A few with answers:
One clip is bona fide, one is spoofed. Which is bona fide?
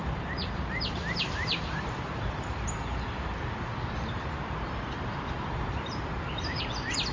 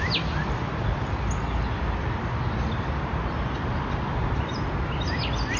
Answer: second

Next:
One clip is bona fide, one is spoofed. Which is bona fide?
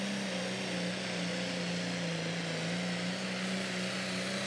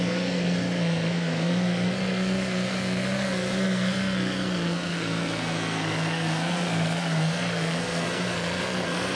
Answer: first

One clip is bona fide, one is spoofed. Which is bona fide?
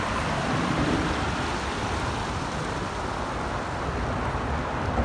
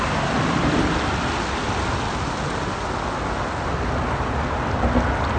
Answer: second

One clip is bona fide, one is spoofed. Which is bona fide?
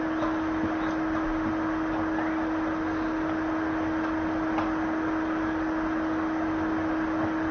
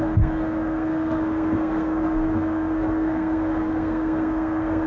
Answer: first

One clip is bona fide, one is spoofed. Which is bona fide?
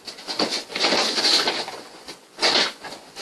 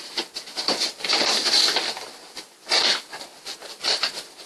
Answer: second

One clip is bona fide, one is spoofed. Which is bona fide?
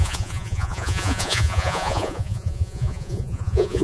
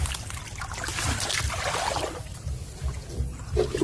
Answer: second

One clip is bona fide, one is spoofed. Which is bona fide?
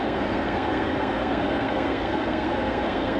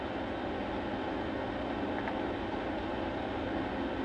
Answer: second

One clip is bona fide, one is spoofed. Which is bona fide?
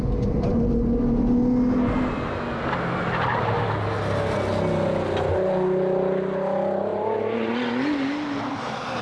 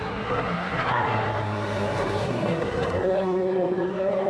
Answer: first